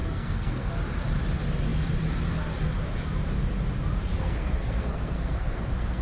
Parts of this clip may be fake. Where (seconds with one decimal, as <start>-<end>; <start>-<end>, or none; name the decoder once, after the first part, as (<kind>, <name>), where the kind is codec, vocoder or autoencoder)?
0.0-0.7 (codec, SNAC); 4.1-6.0